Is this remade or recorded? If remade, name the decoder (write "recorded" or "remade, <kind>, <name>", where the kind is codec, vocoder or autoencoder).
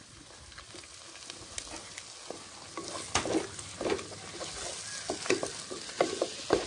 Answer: recorded